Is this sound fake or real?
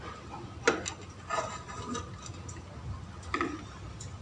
real